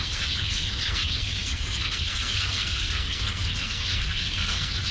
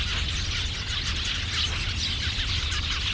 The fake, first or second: first